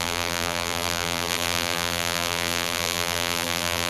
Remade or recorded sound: remade